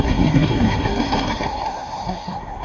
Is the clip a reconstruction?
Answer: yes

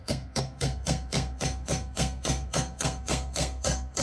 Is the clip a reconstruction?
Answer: yes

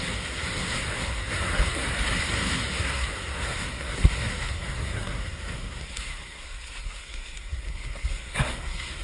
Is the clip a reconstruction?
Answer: yes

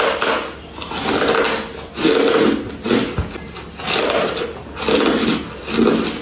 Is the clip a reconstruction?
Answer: no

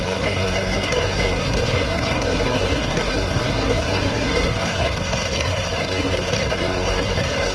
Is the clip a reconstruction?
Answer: yes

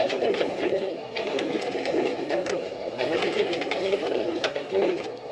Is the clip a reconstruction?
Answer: yes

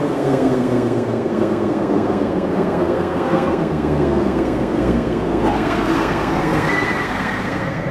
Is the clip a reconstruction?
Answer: yes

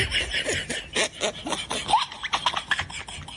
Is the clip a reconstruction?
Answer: no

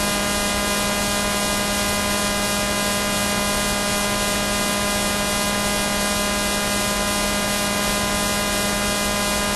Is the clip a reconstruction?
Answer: no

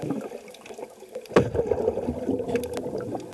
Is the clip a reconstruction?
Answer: no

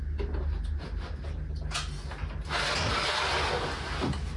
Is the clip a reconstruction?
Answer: no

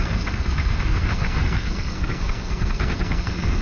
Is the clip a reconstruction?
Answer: yes